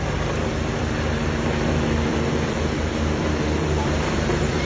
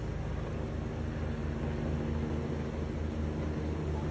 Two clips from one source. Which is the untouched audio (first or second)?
second